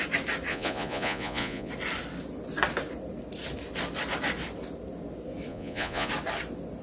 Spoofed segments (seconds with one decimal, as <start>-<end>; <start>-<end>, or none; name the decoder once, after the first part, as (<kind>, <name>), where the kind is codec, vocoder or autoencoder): 0.5-1.7 (vocoder, Vocos); 5.5-6.1